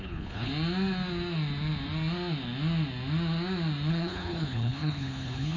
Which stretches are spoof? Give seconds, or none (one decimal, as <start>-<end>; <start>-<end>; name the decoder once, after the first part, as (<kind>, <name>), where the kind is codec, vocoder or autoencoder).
0.0-0.5 (codec, HILCodec); 3.9-5.6